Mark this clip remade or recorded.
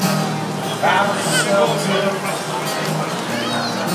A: recorded